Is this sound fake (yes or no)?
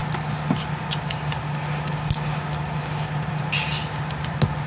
no